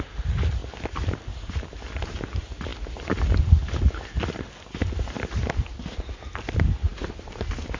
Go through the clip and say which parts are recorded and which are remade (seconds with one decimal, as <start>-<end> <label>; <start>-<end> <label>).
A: 0.0-7.8 recorded